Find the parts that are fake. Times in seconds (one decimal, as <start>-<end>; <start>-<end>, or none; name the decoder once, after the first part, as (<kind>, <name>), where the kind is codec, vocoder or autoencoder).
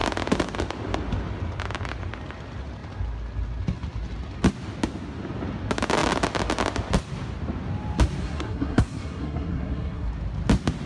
8.2-10.1 (codec, SNAC)